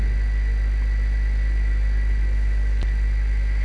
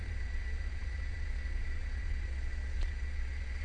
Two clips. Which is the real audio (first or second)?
first